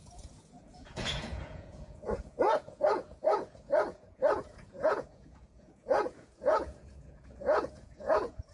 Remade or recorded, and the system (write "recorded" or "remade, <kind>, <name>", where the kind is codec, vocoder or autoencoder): remade, vocoder, Vocos